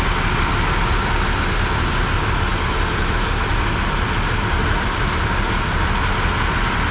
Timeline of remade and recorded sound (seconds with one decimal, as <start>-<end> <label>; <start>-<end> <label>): 0.0-2.5 recorded; 2.5-3.0 remade; 3.0-6.9 recorded